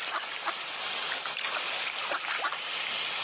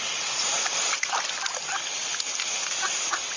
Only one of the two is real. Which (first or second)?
second